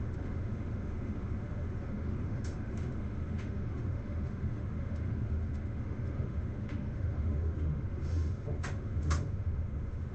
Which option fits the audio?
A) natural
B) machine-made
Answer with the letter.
B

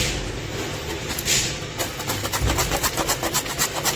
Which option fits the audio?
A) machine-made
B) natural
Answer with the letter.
B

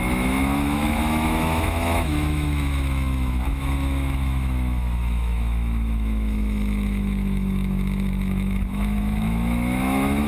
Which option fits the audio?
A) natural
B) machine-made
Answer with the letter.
B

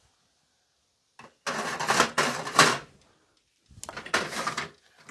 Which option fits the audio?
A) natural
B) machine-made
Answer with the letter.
A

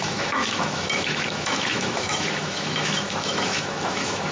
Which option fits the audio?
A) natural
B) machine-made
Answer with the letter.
B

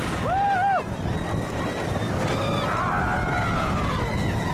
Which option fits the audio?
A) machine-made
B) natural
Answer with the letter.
B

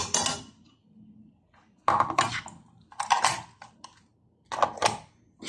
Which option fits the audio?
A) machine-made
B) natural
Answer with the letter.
B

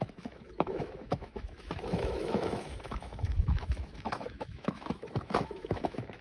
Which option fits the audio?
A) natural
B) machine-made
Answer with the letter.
B